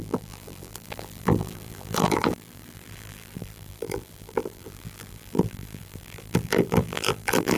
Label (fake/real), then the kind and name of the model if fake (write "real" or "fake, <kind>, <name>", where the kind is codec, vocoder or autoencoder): fake, vocoder, BigVGAN v2